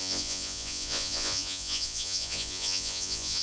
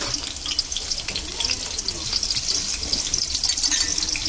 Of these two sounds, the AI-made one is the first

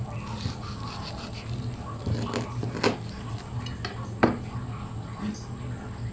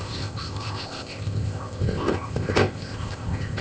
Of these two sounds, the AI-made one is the second